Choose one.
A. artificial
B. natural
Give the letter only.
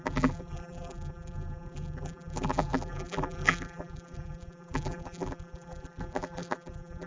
A